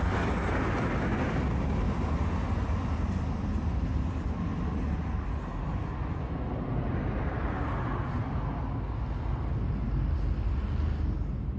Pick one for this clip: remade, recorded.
recorded